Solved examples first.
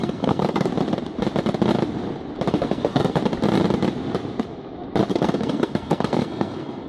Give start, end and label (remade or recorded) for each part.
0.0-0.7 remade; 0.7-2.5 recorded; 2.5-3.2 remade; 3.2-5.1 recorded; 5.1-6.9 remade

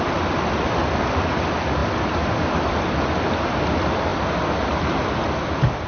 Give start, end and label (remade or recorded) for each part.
0.0-5.9 recorded

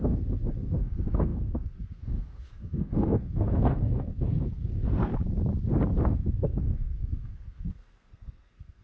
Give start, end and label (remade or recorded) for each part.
0.0-5.1 remade; 5.1-6.0 recorded; 6.0-8.8 remade

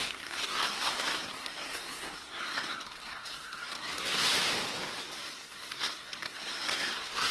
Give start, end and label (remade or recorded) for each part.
0.0-4.3 remade; 4.3-5.0 recorded; 5.0-7.3 remade

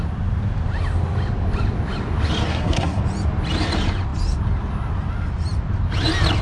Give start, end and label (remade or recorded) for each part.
0.0-2.5 recorded; 2.5-3.0 remade; 3.0-6.4 recorded

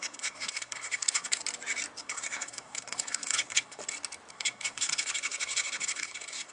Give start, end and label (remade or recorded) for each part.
0.0-1.4 remade; 1.4-2.0 recorded; 2.0-3.8 remade; 3.8-4.3 recorded; 4.3-6.5 remade